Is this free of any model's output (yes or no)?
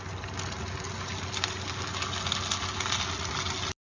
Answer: yes